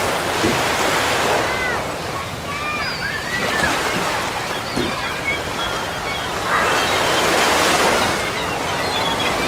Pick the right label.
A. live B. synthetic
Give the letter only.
A